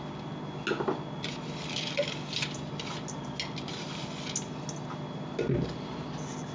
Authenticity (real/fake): real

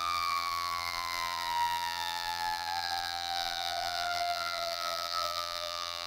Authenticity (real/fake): fake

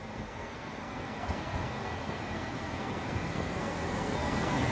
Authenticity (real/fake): fake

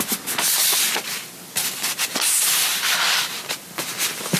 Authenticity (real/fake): real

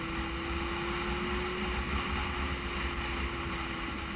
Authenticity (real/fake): real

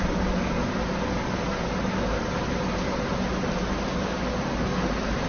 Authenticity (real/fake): real